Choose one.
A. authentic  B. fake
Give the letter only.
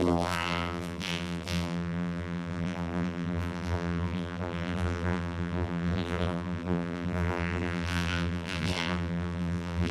B